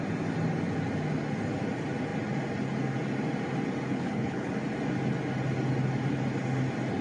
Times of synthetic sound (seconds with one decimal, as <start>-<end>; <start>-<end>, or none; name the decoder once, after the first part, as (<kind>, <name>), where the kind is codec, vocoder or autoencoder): 3.9-4.5 (codec, HILCodec)